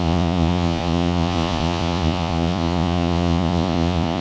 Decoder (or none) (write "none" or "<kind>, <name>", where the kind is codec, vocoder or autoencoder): vocoder, Vocos